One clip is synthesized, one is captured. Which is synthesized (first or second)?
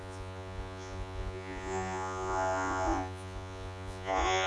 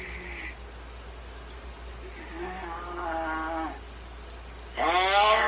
first